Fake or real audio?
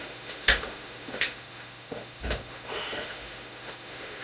fake